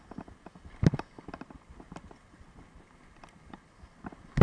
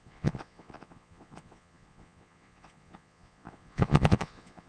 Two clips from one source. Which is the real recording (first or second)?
first